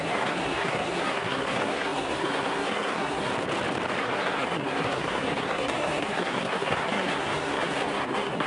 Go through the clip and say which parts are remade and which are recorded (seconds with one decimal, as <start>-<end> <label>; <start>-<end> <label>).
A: 0.0-3.3 remade; 3.3-4.0 recorded; 4.0-8.5 remade

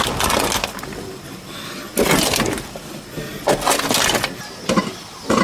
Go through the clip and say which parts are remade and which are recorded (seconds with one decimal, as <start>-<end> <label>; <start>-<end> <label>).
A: 0.0-5.4 recorded

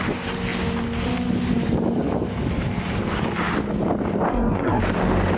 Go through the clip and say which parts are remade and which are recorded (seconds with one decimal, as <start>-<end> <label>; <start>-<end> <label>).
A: 0.0-4.3 recorded; 4.3-4.8 remade; 4.8-5.4 recorded

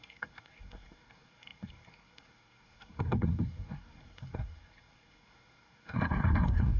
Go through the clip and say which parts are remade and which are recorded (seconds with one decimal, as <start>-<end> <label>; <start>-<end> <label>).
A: 0.0-6.8 remade

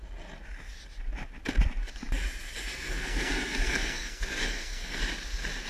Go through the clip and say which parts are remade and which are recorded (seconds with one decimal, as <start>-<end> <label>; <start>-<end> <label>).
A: 0.0-2.7 recorded; 2.7-5.0 remade; 5.0-5.7 recorded

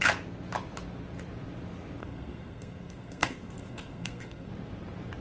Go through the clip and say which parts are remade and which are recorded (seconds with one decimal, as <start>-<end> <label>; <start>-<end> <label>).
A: 0.0-2.0 recorded; 2.0-4.5 remade; 4.5-5.2 recorded

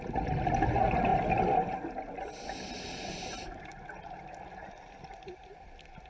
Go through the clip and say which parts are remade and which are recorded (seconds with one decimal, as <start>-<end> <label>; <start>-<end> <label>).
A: 0.0-6.1 recorded